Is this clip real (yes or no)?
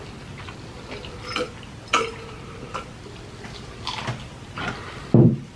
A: yes